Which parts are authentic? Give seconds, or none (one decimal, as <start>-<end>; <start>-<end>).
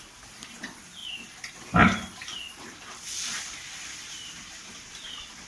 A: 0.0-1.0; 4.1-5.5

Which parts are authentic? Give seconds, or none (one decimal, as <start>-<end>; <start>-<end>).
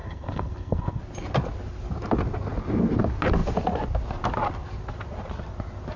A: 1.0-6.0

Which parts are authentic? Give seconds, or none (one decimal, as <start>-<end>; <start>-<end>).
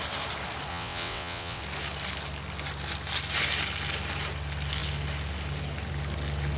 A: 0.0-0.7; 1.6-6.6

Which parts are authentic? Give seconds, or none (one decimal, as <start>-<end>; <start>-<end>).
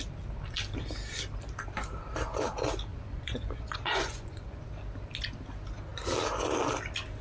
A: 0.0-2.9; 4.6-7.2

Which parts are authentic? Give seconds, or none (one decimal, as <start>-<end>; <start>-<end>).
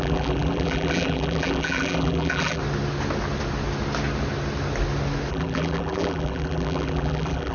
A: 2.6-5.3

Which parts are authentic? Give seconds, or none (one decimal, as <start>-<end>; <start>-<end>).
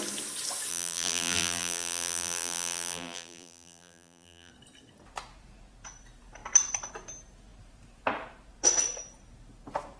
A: 0.0-0.7; 4.5-10.0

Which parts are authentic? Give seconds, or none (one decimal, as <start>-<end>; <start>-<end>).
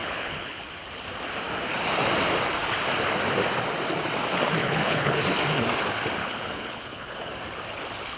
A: 0.7-4.6; 5.2-6.2; 7.3-8.2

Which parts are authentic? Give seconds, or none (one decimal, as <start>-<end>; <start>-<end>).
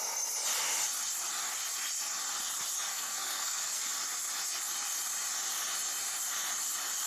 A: 0.0-2.9; 3.9-7.1